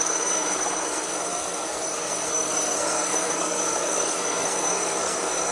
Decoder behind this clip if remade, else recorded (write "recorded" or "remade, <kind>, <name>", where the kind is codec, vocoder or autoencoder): remade, codec, SNAC